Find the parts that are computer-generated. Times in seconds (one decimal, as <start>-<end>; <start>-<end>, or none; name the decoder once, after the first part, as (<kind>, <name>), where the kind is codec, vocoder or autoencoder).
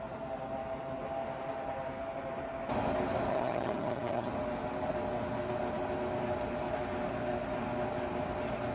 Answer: 3.3-4.3 (vocoder, HiFi-GAN)